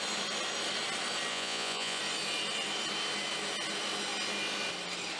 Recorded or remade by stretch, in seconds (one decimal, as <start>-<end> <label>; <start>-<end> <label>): 0.0-1.3 recorded; 1.3-2.0 remade; 2.0-5.2 recorded